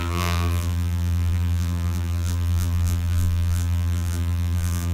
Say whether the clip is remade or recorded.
remade